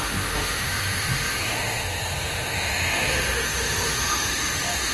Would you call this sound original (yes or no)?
no